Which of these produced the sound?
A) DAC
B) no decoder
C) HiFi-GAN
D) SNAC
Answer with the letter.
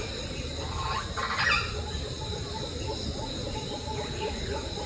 B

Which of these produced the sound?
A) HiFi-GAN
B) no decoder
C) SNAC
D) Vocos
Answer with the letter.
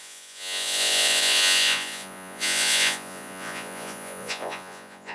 D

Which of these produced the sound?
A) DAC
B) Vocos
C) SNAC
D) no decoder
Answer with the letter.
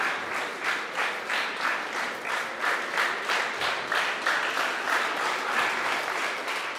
D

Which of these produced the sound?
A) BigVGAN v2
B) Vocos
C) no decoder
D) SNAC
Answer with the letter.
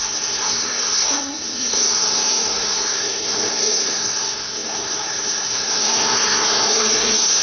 D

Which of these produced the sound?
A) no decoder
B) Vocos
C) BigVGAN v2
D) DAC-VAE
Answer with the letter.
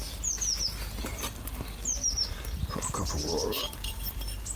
A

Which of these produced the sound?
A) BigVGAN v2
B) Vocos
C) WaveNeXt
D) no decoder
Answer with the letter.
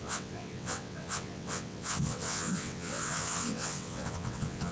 C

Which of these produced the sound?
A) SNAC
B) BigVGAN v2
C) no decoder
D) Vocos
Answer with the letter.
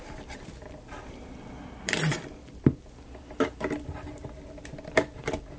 B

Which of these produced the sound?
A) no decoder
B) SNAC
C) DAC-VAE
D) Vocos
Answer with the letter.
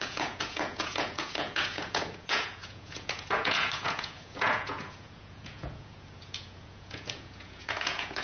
D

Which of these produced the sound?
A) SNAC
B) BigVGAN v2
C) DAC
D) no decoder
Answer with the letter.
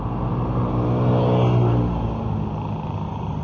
D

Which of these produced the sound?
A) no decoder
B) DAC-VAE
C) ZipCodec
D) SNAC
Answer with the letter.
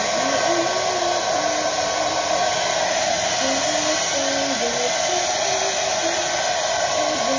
A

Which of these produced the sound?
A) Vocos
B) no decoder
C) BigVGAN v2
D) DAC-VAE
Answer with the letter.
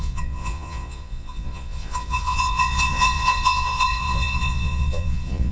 A